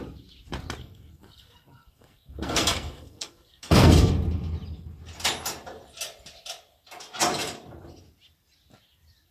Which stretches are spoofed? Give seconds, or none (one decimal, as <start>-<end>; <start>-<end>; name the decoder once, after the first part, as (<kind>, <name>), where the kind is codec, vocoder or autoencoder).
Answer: 0.8-4.1 (codec, SNAC)